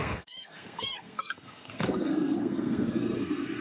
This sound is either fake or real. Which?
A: fake